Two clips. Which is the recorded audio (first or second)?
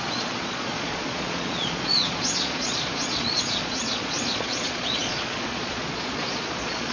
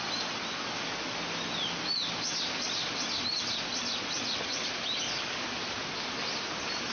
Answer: second